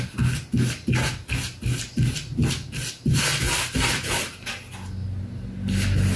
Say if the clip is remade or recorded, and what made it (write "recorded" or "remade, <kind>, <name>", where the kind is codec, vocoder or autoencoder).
recorded